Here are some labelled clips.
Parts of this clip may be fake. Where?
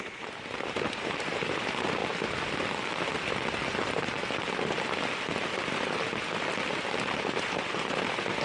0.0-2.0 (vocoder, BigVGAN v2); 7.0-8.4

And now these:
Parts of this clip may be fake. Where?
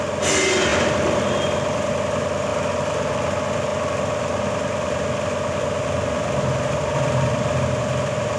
0.7-1.9 (vocoder, BigVGAN v2); 2.5-3.1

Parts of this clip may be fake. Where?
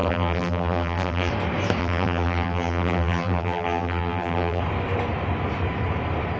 0.0-1.3 (vocoder, BigVGAN v2); 1.8-4.6